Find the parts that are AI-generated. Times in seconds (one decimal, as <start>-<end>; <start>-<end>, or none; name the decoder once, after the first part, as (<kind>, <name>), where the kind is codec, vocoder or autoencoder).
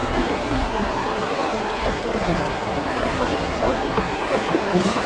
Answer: 0.0-5.1 (codec, SNAC)